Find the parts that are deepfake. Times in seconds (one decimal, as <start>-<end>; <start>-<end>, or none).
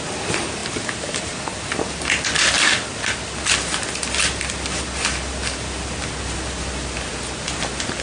none